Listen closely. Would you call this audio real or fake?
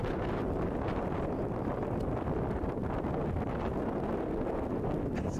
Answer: real